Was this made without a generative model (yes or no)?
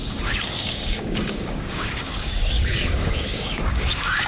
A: no